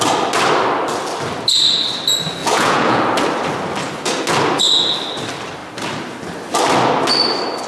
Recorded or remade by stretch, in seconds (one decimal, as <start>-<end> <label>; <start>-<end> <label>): 0.0-2.4 recorded; 2.4-3.0 remade; 3.0-7.7 recorded